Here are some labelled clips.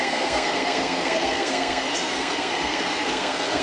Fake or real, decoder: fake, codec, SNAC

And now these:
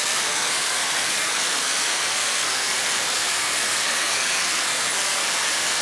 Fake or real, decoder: fake, codec, SNAC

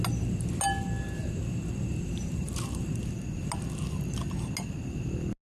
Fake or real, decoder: real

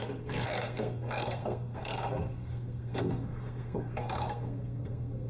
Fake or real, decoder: fake, codec, SNAC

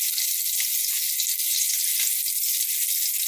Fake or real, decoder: real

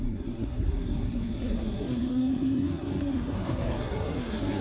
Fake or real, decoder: fake, codec, SNAC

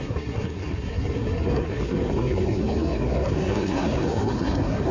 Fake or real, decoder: fake, codec, SNAC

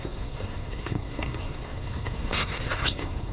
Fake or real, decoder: fake, codec, SNAC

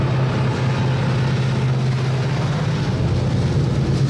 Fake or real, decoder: real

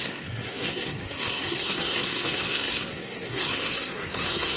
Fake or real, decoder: fake, codec, SNAC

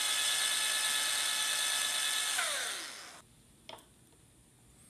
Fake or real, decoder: real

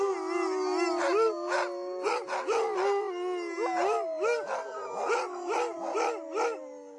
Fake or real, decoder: real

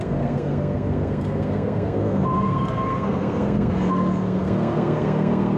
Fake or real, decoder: fake, codec, SNAC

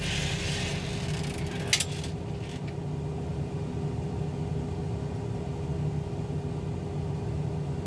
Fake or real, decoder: real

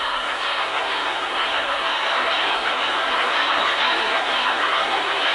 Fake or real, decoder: fake, codec, SNAC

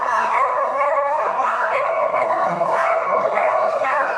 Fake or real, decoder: fake, codec, SNAC